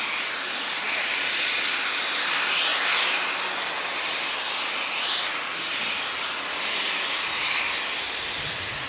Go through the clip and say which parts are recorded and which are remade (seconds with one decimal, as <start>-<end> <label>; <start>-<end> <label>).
0.0-8.9 recorded